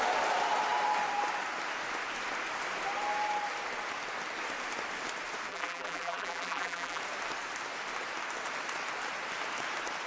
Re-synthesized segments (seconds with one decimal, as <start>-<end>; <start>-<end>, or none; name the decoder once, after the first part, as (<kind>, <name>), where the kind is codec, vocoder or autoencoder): 5.5-7.0 (vocoder, BigVGAN v2)